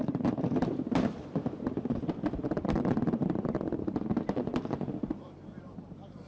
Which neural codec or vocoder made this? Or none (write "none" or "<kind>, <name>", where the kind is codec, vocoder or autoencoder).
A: vocoder, BigVGAN v2